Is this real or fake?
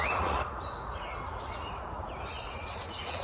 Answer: fake